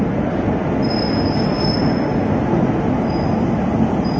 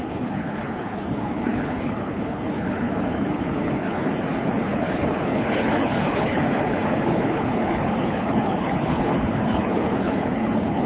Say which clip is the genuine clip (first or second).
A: first